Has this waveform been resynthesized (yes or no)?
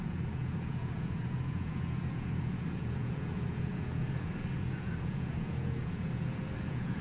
yes